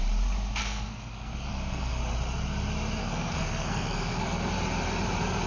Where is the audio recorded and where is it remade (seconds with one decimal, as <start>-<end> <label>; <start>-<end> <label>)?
0.0-0.6 recorded; 0.6-2.0 remade; 2.0-3.0 recorded; 3.0-4.5 remade; 4.5-5.5 recorded